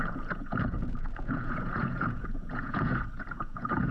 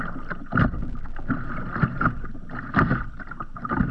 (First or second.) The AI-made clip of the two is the first